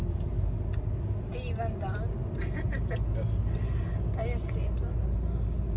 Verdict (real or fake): real